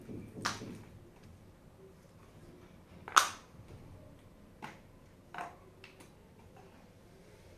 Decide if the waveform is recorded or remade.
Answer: recorded